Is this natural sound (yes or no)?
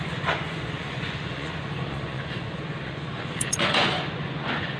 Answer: no